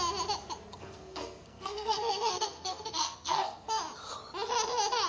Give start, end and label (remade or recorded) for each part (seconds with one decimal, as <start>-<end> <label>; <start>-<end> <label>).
0.0-0.7 recorded; 0.7-3.8 remade; 3.8-5.1 recorded